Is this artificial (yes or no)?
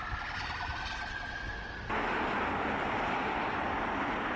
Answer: no